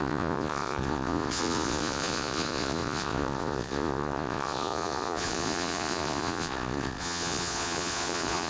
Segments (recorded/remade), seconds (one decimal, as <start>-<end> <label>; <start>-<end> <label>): 0.0-8.5 remade